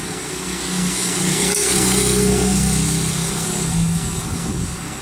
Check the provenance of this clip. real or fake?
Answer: fake